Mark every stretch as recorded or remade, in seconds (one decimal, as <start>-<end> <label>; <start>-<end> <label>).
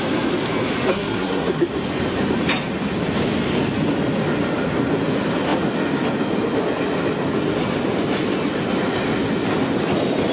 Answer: 0.0-0.9 recorded; 0.9-1.7 remade; 1.7-10.3 recorded